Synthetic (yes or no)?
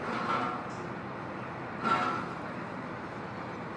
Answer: no